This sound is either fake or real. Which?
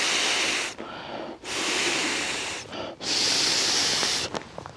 real